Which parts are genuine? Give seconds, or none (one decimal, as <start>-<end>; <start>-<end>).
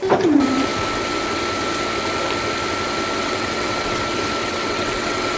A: 0.0-3.2; 4.0-4.4